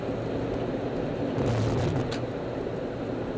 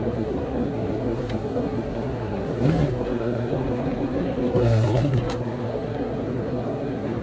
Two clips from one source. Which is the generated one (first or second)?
second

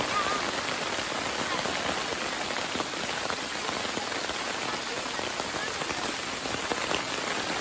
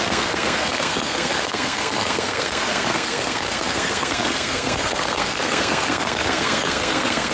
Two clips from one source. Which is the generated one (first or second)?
second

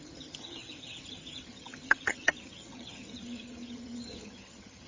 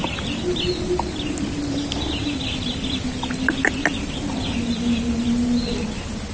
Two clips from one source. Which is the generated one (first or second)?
first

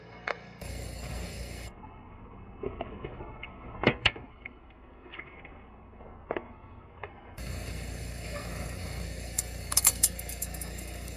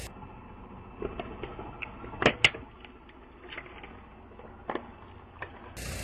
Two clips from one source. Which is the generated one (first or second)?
first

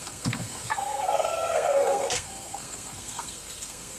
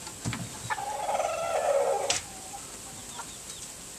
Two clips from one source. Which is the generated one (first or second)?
first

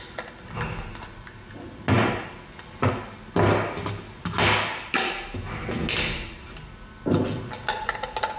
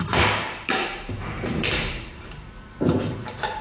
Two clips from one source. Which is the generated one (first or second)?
second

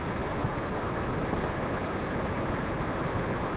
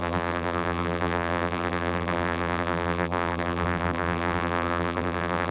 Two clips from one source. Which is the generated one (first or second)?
second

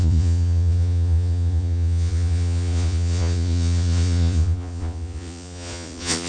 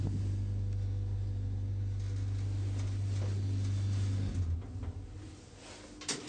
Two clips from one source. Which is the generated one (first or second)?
first